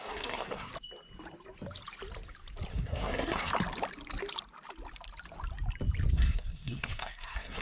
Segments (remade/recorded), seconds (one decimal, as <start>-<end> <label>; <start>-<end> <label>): 0.0-0.7 remade; 0.7-2.7 recorded; 2.7-3.5 remade; 3.5-6.1 recorded; 6.1-7.6 remade